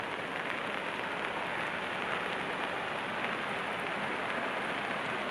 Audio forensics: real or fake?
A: real